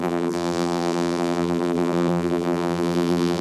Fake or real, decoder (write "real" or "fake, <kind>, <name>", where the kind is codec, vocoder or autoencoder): fake, vocoder, BigVGAN v2